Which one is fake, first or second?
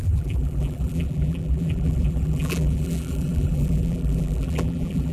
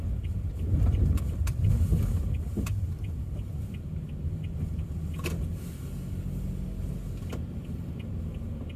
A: first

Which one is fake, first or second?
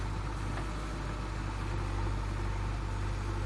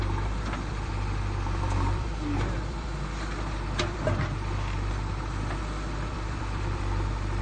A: second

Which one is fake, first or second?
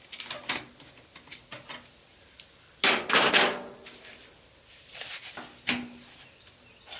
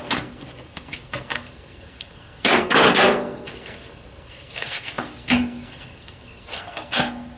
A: second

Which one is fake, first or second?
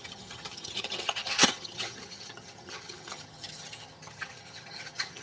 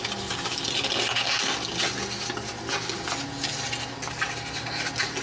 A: first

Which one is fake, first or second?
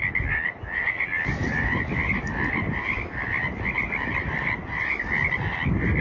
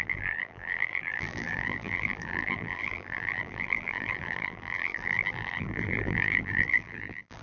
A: second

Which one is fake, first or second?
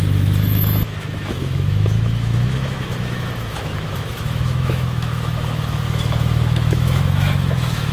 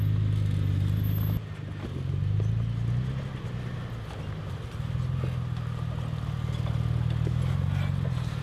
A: first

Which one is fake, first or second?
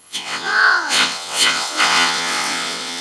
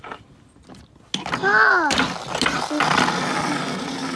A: first